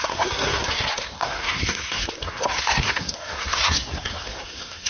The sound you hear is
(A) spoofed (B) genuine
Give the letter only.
A